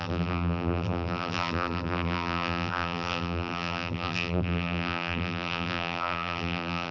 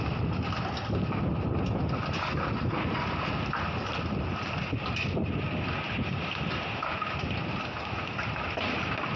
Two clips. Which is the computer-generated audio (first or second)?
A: first